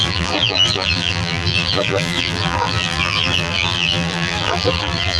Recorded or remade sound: remade